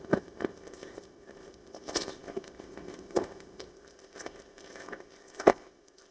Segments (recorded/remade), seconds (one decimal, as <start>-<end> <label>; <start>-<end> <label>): 0.0-6.1 remade